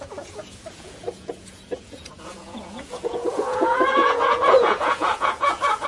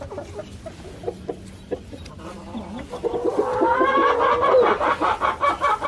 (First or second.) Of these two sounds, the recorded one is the second